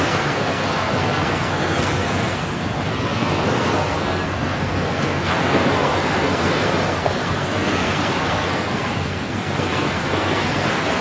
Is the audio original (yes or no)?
no